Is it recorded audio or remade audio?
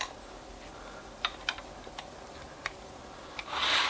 recorded